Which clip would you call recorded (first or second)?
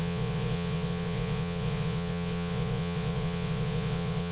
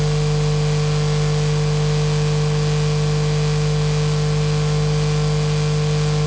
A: second